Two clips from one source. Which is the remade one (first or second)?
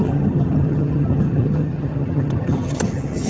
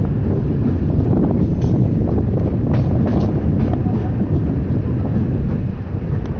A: first